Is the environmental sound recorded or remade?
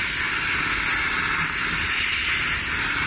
recorded